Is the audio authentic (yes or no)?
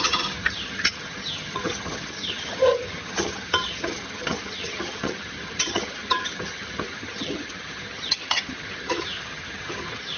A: no